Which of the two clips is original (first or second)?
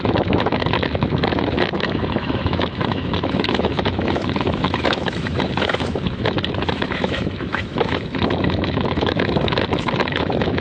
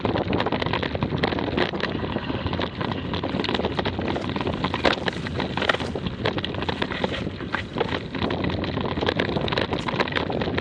second